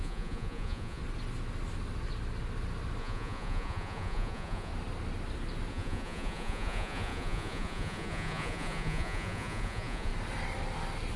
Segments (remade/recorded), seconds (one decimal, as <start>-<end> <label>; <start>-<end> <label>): 0.0-1.0 remade; 1.0-3.0 recorded; 3.0-4.7 remade; 4.7-5.7 recorded; 5.7-10.1 remade; 10.1-11.2 recorded